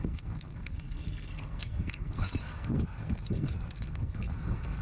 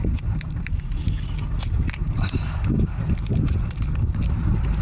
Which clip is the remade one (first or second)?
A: first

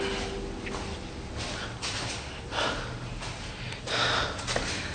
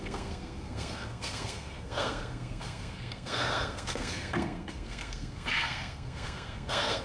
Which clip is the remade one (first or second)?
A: second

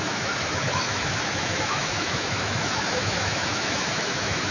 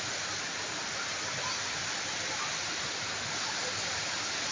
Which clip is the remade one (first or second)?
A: first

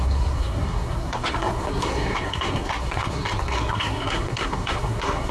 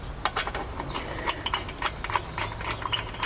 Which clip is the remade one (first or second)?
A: first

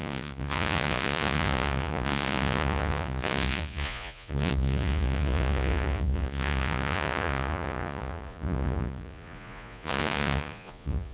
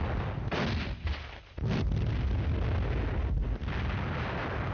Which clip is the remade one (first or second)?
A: first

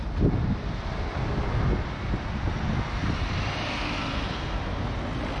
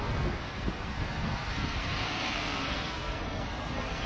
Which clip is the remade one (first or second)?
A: second